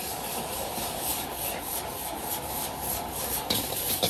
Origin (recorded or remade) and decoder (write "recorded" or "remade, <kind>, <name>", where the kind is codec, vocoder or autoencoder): remade, codec, DAC